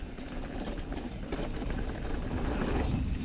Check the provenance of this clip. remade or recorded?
recorded